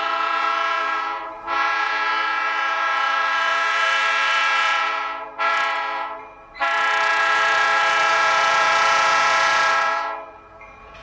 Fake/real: fake